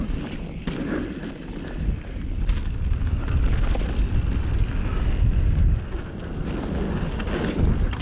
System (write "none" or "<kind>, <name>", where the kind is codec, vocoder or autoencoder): none